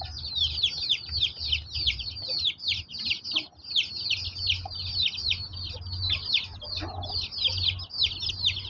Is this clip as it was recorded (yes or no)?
yes